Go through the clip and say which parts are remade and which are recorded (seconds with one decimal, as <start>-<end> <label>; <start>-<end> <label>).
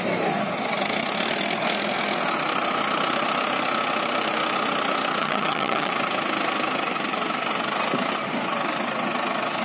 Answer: 0.0-5.2 recorded; 5.2-5.9 remade; 5.9-9.6 recorded